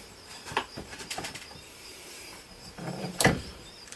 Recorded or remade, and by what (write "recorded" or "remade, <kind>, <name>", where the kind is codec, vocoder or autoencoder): remade, vocoder, BigVGAN v2